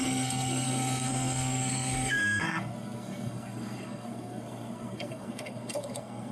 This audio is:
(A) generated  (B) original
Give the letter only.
A